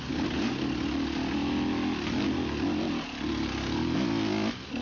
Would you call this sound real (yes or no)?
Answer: yes